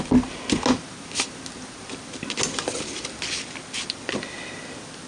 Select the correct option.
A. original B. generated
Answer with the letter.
A